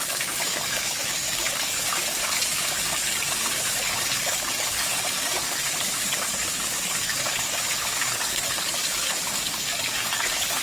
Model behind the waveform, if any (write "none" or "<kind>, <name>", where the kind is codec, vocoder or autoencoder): codec, DAC